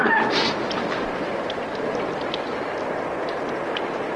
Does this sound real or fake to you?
real